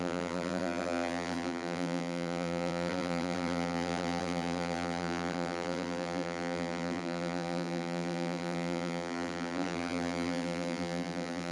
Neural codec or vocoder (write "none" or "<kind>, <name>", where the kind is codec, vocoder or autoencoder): vocoder, BigVGAN v2